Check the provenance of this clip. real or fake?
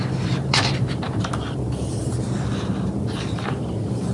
fake